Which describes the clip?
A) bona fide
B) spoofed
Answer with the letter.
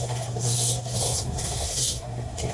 B